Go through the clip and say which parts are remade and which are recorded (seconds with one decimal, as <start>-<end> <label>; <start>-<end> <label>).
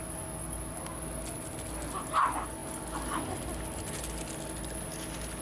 0.0-5.4 recorded